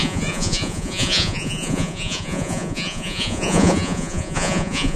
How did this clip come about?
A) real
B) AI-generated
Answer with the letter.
B